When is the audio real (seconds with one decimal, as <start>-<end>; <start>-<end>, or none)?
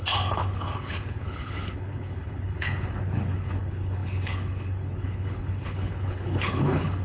none